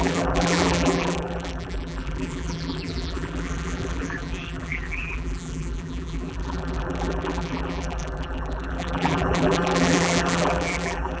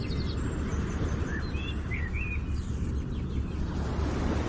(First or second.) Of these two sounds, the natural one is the second